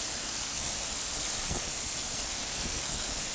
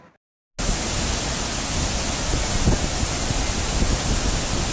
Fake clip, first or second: first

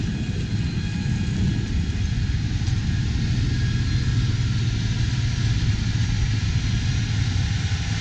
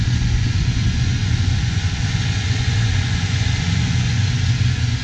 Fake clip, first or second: second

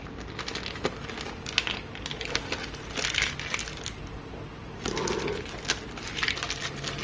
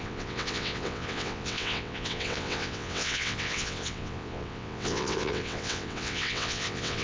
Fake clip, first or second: second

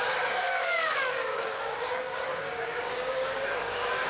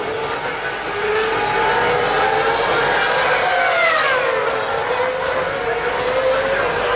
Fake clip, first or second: first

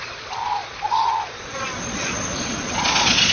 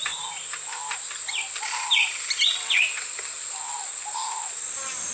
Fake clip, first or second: first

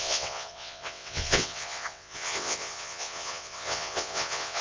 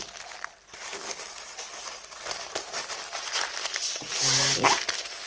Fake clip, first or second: first